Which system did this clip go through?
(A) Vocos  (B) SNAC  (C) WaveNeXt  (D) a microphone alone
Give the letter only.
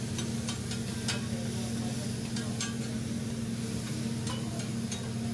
D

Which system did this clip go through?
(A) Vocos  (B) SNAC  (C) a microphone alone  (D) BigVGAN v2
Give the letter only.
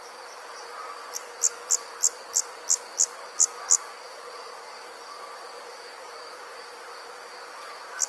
C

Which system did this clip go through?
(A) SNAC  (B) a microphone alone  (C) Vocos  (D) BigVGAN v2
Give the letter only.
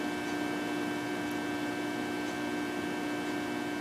B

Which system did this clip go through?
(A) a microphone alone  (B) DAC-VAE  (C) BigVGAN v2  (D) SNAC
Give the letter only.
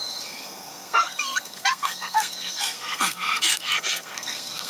D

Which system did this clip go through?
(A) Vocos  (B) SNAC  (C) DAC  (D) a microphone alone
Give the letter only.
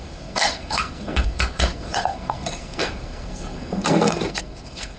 B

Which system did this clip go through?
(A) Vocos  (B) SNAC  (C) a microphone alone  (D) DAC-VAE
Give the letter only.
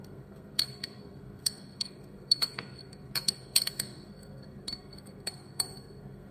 B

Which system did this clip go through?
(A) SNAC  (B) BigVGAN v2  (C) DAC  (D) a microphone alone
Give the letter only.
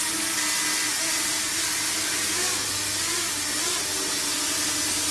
D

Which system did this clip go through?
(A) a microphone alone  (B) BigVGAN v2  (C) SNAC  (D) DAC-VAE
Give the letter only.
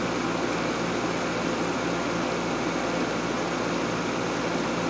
A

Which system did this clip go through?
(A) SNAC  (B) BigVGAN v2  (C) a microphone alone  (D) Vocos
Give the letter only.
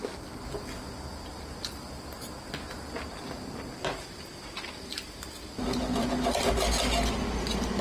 C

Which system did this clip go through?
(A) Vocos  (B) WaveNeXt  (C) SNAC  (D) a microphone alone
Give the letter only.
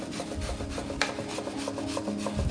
D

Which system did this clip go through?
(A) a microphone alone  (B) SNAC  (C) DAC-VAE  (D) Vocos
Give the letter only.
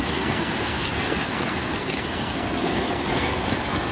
B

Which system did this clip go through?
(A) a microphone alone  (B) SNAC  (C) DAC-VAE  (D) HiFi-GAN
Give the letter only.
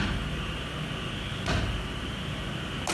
A